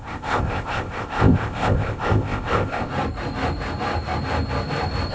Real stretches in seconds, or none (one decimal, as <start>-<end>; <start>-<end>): 2.9-5.1